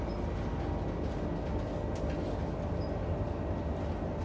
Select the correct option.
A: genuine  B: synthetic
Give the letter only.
A